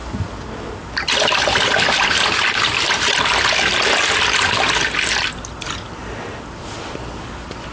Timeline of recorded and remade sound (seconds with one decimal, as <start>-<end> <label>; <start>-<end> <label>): 0.0-7.7 recorded

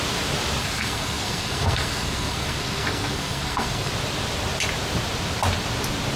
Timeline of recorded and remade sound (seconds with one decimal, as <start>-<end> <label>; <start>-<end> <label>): 0.0-0.6 recorded; 0.6-3.9 remade; 3.9-6.2 recorded

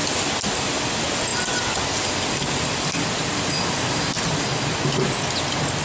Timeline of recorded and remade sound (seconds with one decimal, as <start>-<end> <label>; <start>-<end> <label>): 0.0-5.8 recorded

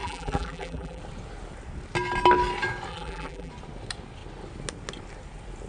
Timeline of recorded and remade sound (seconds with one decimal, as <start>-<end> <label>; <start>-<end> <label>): 0.0-1.0 remade; 1.0-2.9 recorded; 2.9-3.5 remade; 3.5-5.7 recorded